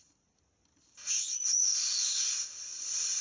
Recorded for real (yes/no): yes